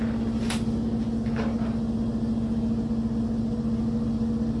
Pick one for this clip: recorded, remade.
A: recorded